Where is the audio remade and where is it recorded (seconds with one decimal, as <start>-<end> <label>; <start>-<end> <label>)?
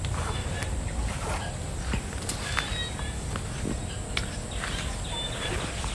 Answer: 0.0-5.9 recorded